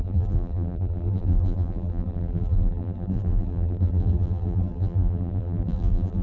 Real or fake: fake